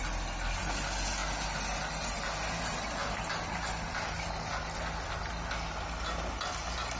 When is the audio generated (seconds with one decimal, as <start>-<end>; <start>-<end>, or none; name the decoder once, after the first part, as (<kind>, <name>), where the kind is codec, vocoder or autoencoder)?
none